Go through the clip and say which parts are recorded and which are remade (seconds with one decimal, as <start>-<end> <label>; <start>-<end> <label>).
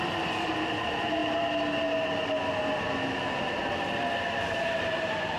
0.0-1.2 remade; 1.2-4.4 recorded; 4.4-5.4 remade